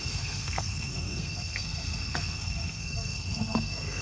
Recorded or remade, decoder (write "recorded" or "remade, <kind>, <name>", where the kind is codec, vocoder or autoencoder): remade, codec, SNAC